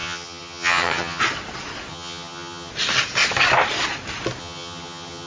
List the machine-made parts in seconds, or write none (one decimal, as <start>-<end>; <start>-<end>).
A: 0.0-1.2; 1.9-2.7; 4.4-5.3